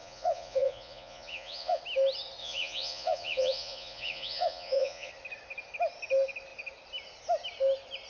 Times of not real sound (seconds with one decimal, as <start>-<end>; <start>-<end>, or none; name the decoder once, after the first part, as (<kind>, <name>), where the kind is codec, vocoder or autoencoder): 0.0-1.8 (vocoder, Vocos); 2.4-5.1